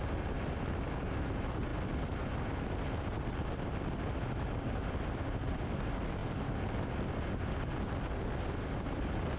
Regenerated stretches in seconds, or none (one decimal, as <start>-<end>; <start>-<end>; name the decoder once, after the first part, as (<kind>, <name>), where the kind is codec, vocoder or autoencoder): 0.0-1.7 (vocoder, BigVGAN v2); 3.3-6.2; 8.8-9.4